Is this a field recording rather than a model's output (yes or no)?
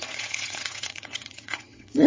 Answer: no